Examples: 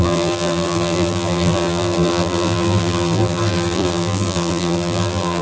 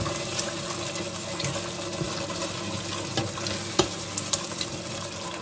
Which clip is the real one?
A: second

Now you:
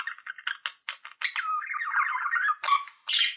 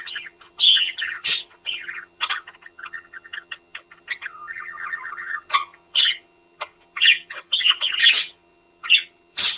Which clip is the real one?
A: first